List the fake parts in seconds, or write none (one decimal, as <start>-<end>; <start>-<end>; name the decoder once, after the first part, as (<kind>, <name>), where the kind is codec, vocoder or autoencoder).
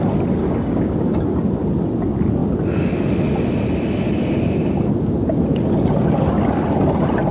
0.4-1.2 (codec, DAC)